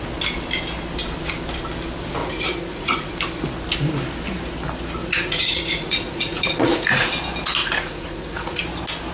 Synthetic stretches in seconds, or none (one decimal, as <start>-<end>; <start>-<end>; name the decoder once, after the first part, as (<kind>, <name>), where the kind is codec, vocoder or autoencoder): 2.2-3.1 (vocoder, Vocos); 5.0-7.1; 7.6-8.6